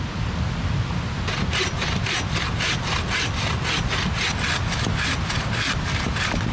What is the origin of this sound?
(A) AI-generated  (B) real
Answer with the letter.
B